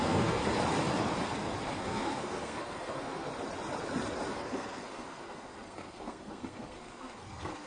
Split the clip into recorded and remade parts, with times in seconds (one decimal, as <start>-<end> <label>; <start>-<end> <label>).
0.0-0.4 remade; 0.4-1.7 recorded; 1.7-3.3 remade; 3.3-4.3 recorded; 4.3-7.7 remade